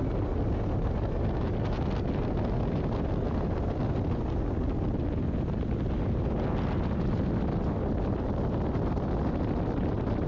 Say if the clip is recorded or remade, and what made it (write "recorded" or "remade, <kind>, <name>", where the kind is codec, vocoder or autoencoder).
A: recorded